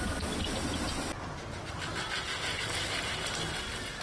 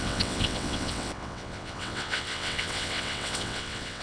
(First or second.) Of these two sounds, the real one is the first